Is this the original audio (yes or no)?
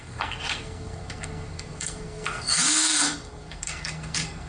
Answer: no